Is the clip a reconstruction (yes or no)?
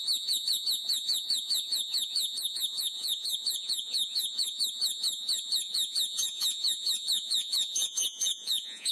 yes